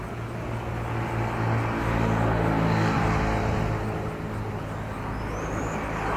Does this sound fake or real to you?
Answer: real